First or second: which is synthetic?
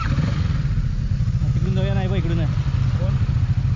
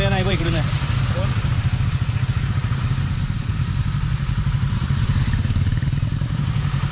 second